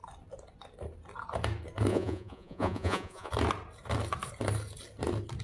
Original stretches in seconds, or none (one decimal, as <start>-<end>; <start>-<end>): 0.0-1.9; 3.3-5.4